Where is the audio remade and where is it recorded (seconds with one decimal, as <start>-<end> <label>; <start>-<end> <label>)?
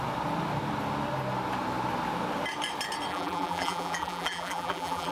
0.0-3.1 recorded; 3.1-5.1 remade